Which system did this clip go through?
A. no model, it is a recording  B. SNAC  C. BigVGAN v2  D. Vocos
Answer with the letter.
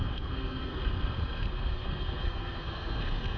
B